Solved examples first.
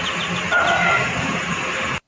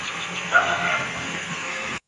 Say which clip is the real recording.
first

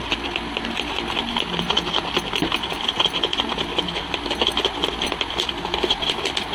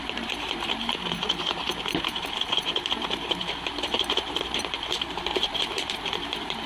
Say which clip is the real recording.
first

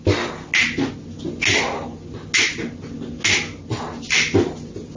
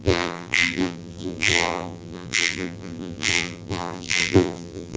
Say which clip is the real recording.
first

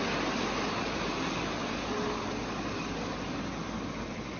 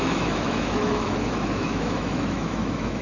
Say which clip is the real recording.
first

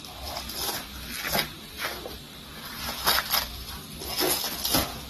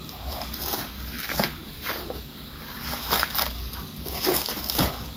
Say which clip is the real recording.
first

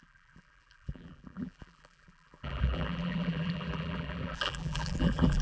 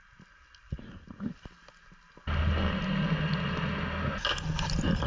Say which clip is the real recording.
second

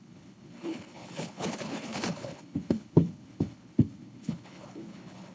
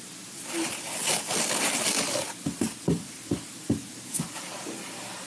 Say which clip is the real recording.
second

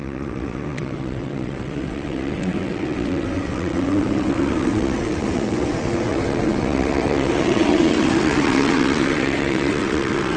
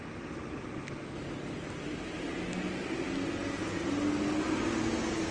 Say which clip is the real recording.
second